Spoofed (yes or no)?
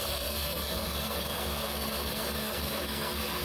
yes